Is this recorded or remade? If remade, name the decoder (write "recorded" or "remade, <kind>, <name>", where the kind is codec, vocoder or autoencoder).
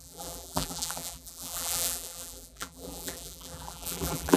remade, vocoder, BigVGAN v2